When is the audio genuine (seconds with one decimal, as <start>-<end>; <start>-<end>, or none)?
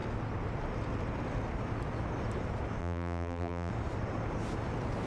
0.0-2.8; 3.7-5.1